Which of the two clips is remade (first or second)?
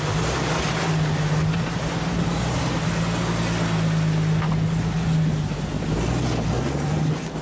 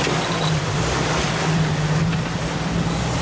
second